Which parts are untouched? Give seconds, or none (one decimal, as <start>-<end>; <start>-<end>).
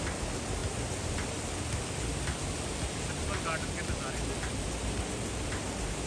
0.0-6.1